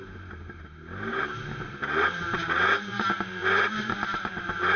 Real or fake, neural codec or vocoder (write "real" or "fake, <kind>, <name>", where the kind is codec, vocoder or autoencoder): fake, vocoder, BigVGAN v2